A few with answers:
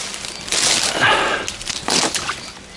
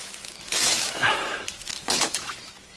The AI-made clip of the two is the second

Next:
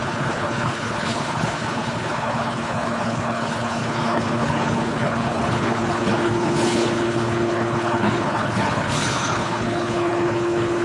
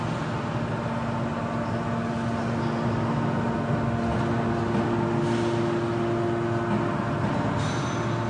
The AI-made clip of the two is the first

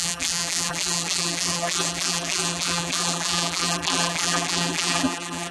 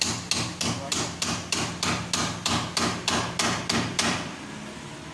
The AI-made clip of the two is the first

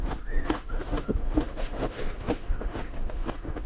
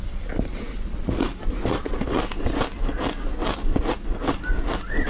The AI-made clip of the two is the first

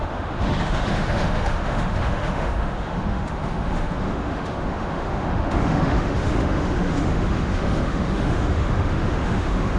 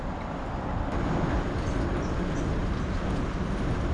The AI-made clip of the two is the first